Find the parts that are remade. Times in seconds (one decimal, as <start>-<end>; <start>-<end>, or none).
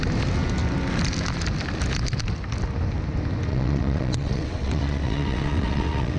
3.5-6.2